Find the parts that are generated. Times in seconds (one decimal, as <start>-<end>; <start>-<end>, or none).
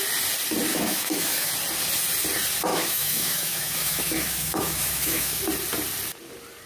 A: 0.7-1.5; 2.7-5.4